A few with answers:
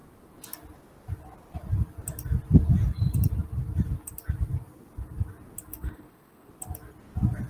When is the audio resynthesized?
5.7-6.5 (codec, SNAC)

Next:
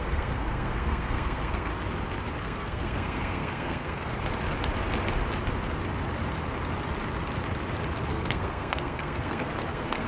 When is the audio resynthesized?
0.0-1.7 (codec, SNAC); 2.4-4.1; 8.1-10.1

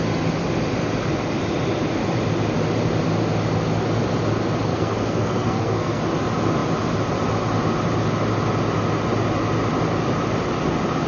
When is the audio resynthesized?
4.7-6.0 (codec, SNAC)

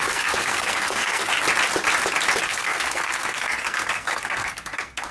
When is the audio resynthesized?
0.0-1.3 (codec, SNAC); 2.4-5.1

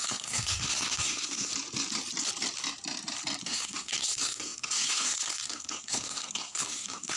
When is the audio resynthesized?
0.0-1.5 (codec, SNAC); 3.4-7.2

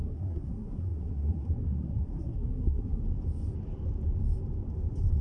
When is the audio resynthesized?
0.0-3.0 (codec, SNAC)

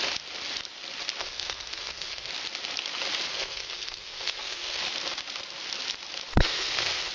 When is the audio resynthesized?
1.2-2.3 (codec, SNAC); 3.3-4.8; 6.3-7.1